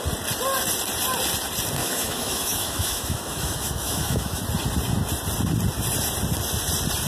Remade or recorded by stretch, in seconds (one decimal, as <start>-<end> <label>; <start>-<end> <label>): 0.0-1.8 recorded; 1.8-4.4 remade; 4.4-7.1 recorded